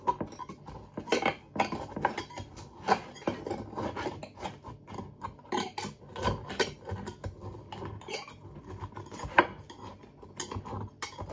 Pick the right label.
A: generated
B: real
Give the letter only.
B